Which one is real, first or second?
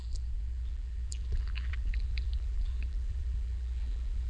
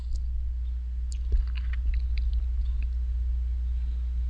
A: second